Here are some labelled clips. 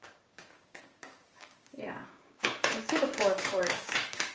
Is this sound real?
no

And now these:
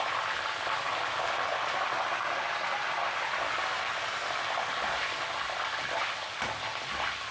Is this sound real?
yes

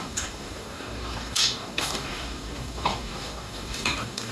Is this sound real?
no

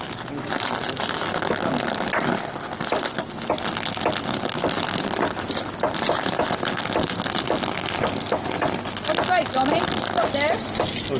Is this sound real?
yes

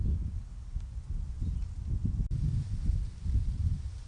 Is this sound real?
yes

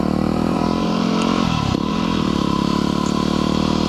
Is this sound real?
no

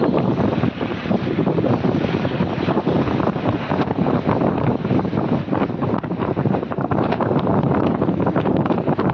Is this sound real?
no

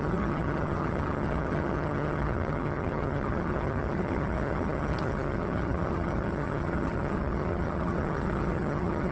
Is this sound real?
no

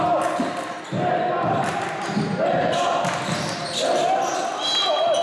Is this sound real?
yes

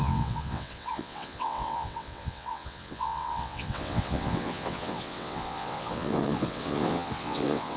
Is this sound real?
no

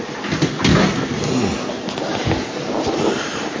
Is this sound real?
yes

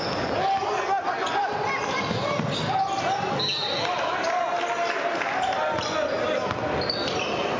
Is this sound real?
yes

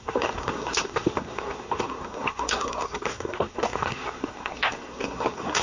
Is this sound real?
no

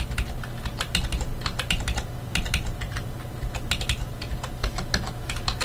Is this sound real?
yes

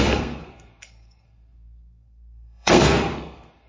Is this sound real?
no